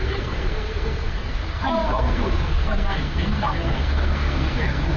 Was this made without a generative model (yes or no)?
no